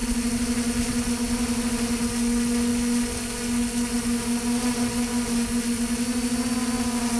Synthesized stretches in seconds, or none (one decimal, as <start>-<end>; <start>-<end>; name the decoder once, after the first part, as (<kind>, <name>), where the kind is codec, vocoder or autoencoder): 0.0-0.9 (vocoder, BigVGAN v2)